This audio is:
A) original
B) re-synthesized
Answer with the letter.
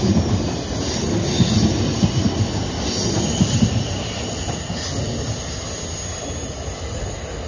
A